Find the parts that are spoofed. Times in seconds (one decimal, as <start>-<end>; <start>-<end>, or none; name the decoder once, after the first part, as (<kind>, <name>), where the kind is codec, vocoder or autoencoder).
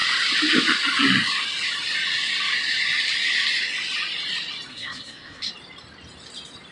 4.7-5.5 (codec, SNAC)